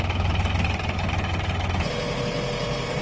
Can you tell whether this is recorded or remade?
recorded